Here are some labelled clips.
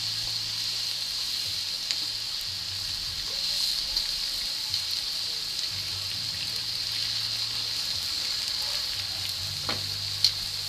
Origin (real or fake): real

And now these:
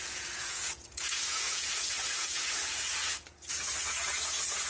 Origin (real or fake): fake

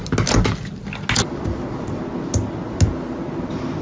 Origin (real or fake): real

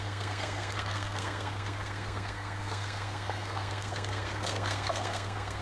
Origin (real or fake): fake